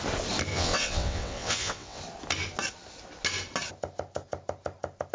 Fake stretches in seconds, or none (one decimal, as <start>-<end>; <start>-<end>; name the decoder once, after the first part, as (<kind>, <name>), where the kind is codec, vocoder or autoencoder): 0.5-2.0 (vocoder, WaveNeXt)